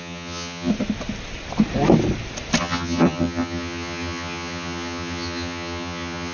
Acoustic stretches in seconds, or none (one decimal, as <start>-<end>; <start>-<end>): 0.7-2.6